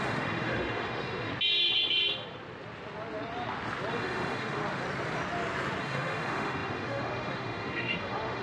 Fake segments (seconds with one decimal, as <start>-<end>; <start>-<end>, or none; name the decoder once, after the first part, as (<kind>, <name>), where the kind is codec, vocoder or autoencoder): 0.0-1.3 (autoencoder, DAC-VAE); 3.9-4.6; 5.8-8.4